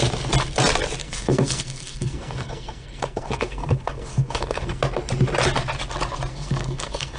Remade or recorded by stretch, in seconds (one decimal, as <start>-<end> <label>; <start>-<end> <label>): 0.0-1.0 recorded; 1.0-4.8 remade; 4.8-6.3 recorded; 6.3-7.2 remade

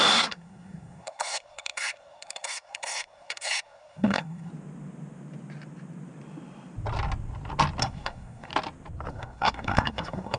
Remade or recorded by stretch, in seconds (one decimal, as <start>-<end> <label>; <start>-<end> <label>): 0.0-4.5 remade; 4.5-7.8 recorded; 7.8-8.5 remade; 8.5-9.1 recorded; 9.1-10.4 remade

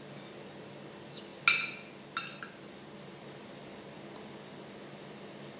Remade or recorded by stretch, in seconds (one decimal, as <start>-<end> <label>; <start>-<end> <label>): 0.0-5.6 recorded

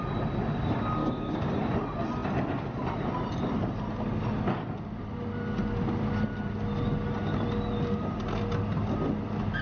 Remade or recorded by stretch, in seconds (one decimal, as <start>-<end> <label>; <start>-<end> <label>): 0.0-1.0 recorded; 1.0-1.5 remade; 1.5-9.6 recorded

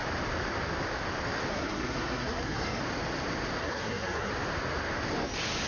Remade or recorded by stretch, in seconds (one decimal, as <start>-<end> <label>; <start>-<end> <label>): 0.0-1.5 recorded; 1.5-2.8 remade; 2.8-3.6 recorded; 3.6-4.3 remade; 4.3-5.7 recorded

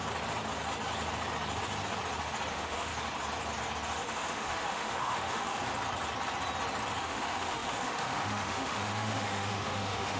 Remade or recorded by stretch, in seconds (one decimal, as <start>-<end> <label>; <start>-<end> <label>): 0.0-2.5 recorded; 2.5-2.9 remade; 2.9-4.0 recorded; 4.0-5.6 remade; 5.6-7.0 recorded; 7.0-10.2 remade

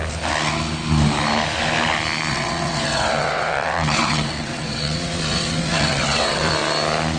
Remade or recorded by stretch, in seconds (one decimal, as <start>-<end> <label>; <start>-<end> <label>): 0.0-2.3 recorded; 2.3-6.5 remade; 6.5-7.2 recorded